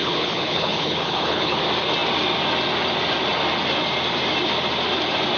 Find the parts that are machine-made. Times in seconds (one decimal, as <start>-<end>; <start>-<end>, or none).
0.0-1.6